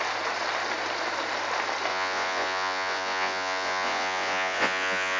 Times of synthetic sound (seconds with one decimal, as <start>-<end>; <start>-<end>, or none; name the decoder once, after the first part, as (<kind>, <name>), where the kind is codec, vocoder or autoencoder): 1.9-5.2 (vocoder, Vocos)